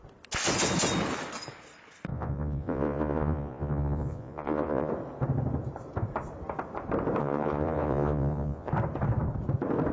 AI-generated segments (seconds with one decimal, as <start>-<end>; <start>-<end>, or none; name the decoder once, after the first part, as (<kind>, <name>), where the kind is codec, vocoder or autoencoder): 2.1-4.9 (vocoder, Vocos); 7.2-8.7